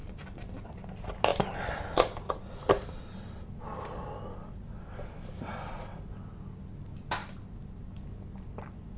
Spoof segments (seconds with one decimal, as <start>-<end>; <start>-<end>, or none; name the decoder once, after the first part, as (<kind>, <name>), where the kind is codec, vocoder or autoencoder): none

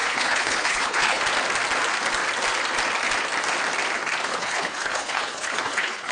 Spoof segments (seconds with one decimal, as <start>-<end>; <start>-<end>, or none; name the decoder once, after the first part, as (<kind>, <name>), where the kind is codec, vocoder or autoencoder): 0.0-1.2 (codec, HILCodec); 4.3-6.1

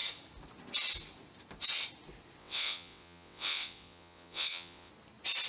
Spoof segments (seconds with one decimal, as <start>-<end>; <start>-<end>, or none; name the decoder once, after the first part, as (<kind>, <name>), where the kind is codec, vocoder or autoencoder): 2.4-4.9 (vocoder, WaveNeXt)

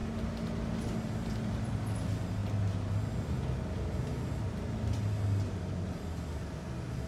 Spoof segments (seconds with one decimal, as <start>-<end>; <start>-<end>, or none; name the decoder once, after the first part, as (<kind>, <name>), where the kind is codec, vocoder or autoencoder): none

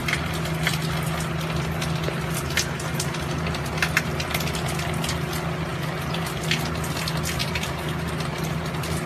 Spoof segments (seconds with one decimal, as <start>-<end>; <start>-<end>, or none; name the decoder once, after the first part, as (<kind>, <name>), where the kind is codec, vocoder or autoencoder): 5.7-6.4 (vocoder, BigVGAN v2); 7.4-8.1

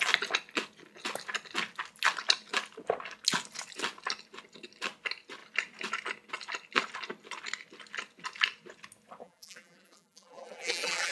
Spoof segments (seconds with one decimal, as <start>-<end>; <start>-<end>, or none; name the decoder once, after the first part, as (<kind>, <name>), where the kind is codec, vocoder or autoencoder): 9.2-11.1 (vocoder, BigVGAN v2)

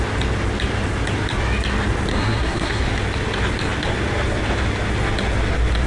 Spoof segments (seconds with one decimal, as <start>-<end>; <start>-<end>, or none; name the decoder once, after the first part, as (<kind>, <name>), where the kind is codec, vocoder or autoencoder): 2.1-2.8 (codec, SNAC)

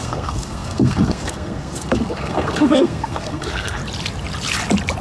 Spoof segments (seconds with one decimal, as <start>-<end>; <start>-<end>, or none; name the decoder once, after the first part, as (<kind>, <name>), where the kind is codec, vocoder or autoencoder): 0.0-3.8 (codec, SNAC)